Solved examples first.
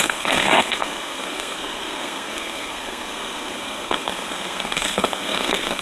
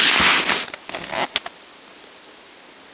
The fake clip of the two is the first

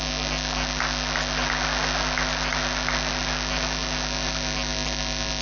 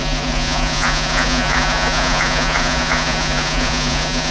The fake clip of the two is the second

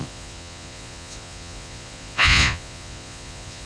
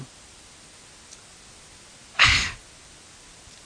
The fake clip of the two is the first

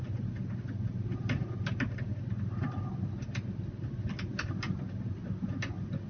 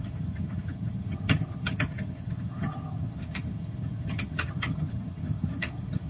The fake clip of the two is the second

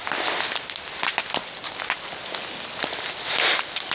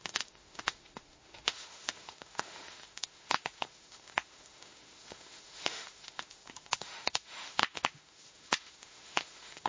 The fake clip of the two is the second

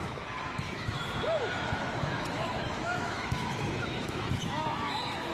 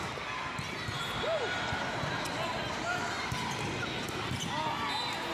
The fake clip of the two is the first